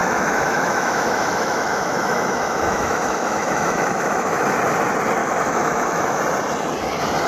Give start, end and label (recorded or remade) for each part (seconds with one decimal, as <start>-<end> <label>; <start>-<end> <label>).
0.0-4.4 remade; 4.4-5.2 recorded; 5.2-6.2 remade; 6.2-7.3 recorded